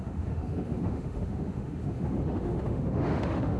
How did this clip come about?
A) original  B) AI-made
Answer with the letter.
B